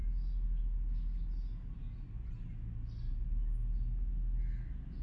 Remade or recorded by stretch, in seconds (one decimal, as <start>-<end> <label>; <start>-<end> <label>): 0.0-5.0 recorded